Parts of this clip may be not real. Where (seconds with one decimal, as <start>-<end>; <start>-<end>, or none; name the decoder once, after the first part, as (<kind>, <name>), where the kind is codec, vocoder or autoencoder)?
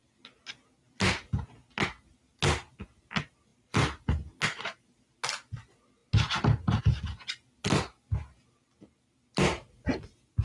3.5-4.0 (vocoder, BigVGAN v2)